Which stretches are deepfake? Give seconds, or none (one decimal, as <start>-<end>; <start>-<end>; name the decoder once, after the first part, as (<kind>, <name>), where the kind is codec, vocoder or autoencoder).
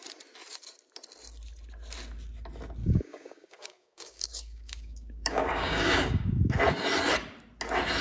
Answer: 2.8-6.6 (codec, DAC)